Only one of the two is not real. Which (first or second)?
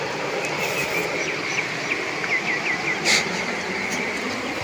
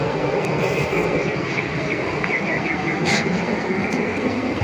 second